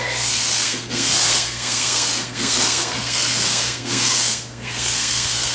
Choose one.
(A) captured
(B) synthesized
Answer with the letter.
B